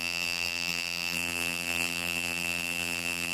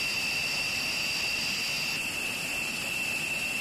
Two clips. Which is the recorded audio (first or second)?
second